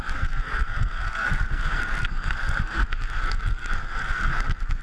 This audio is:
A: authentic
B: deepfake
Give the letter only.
B